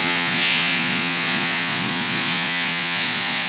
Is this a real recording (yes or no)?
no